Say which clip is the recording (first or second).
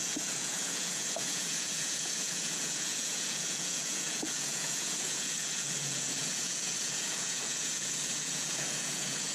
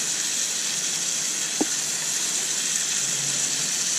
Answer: second